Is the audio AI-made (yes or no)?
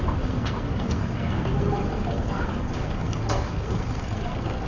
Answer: yes